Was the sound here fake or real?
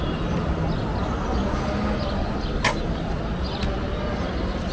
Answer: real